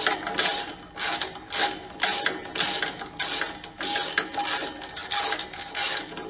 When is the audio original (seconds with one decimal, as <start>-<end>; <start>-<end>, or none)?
0.0-6.3